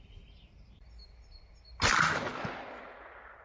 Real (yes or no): yes